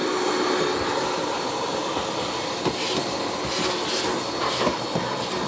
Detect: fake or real real